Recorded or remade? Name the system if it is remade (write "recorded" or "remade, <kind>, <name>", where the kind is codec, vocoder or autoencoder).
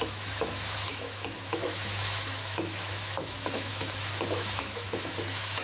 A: remade, autoencoder, DAC-VAE